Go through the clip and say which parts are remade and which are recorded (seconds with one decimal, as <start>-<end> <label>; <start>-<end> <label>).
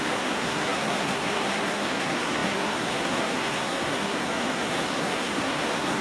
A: 0.0-6.0 remade